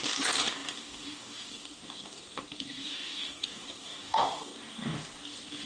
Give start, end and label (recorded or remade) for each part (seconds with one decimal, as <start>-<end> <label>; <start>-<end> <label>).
0.0-5.7 remade